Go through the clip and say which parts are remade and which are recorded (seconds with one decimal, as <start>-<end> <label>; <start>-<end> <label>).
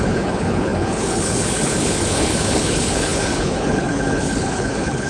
0.0-5.1 remade